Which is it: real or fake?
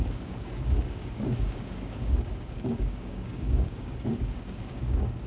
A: fake